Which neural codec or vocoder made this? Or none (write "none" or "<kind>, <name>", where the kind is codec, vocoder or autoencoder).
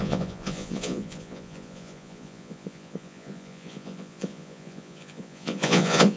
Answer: vocoder, Vocos